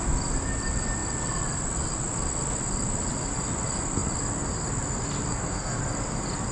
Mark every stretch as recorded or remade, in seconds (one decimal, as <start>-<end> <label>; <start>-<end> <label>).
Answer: 0.0-5.3 recorded; 5.3-5.8 remade; 5.8-6.5 recorded